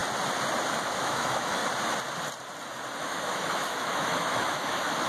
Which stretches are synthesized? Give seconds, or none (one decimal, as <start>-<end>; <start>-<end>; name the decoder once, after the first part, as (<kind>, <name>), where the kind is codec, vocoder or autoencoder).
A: 0.8-1.6 (autoencoder, DAC-VAE); 3.0-5.1